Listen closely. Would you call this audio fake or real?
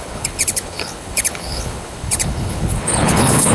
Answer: fake